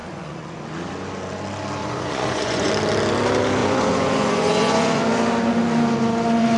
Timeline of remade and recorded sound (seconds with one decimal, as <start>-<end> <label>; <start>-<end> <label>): 0.0-0.6 remade; 0.6-1.8 recorded; 1.8-2.7 remade; 2.7-3.6 recorded; 3.6-5.0 remade; 5.0-6.6 recorded